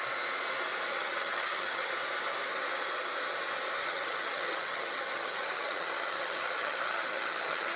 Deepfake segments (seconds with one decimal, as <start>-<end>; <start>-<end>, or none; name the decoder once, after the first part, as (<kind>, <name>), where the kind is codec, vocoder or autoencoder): 0.9-1.9 (vocoder, HiFi-GAN); 3.8-7.8